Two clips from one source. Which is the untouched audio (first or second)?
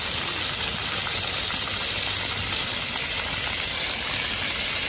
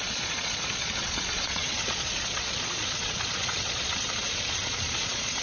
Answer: first